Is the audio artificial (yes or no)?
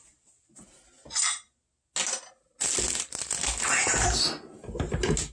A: no